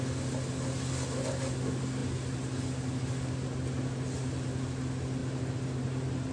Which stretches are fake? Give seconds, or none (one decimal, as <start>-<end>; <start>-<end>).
none